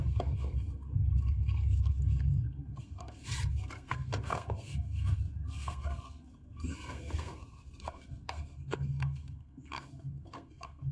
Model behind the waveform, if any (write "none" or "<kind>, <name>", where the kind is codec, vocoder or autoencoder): codec, SNAC